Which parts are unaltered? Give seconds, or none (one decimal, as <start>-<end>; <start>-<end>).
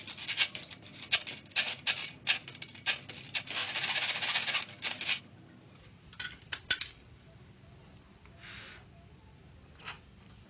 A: 0.0-10.5